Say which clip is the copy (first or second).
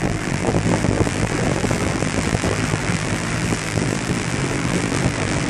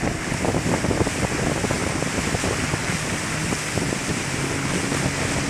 first